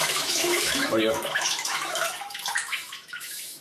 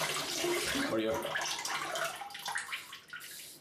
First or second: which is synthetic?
first